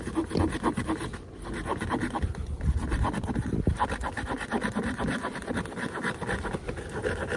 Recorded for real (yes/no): yes